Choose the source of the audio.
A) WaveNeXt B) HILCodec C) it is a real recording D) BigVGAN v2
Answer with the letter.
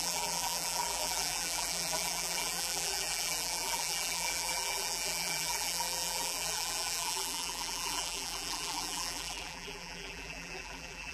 D